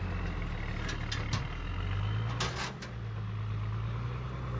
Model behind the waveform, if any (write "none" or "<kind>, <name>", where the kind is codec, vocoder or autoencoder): none